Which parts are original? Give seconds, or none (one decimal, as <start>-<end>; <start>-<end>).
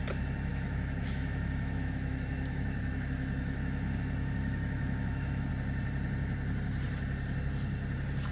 0.0-0.5; 5.5-8.3